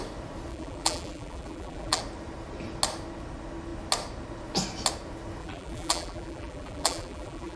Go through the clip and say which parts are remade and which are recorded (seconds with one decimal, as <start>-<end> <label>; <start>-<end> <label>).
0.0-0.5 recorded; 0.5-2.0 remade; 2.0-5.4 recorded; 5.4-7.6 remade